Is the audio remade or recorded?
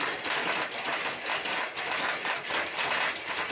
recorded